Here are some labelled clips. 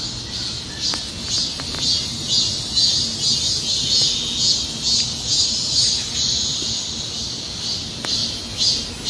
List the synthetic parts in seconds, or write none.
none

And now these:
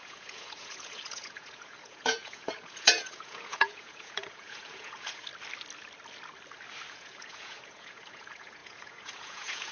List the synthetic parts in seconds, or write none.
0.0-5.3 (vocoder, Vocos); 6.9-9.7